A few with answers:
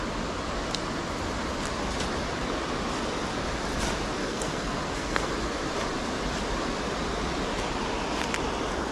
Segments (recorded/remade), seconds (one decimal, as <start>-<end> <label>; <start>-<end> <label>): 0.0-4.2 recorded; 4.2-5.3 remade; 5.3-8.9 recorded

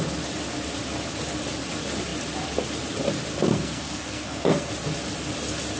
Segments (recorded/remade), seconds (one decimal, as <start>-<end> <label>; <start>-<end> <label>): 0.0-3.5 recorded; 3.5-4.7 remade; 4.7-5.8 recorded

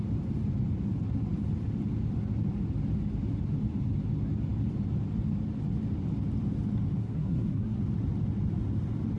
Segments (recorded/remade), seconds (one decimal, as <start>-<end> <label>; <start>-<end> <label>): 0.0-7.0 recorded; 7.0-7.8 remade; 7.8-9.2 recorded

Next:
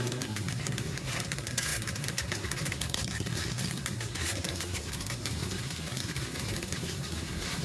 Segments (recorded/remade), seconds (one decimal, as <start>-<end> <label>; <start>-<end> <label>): 0.0-7.6 remade

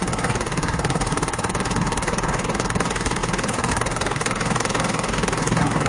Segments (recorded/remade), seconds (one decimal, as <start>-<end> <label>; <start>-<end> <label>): 0.0-5.9 remade